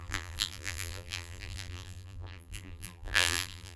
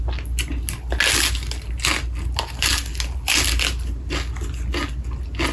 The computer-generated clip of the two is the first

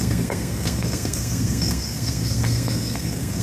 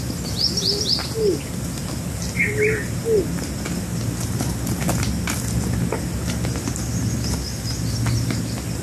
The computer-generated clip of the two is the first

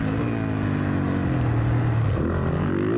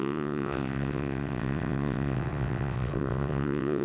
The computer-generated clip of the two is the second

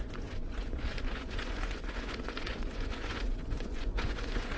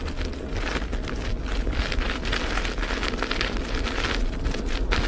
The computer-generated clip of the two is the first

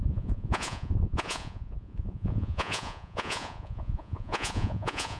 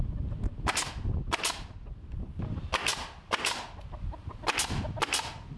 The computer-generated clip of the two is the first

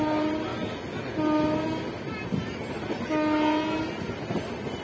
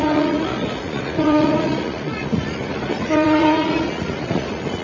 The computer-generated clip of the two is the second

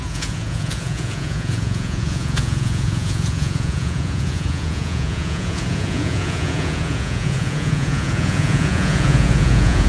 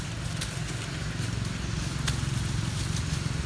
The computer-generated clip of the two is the first